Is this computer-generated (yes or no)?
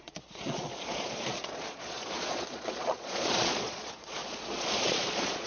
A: yes